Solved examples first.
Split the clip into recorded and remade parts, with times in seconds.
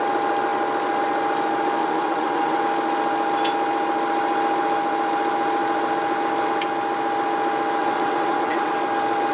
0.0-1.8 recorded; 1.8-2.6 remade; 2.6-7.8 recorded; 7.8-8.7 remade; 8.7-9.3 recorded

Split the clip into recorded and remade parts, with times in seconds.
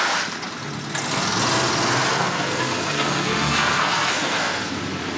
0.0-2.1 recorded; 2.1-4.8 remade; 4.8-5.2 recorded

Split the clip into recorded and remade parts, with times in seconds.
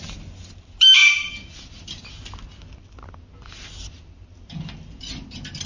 0.0-5.7 recorded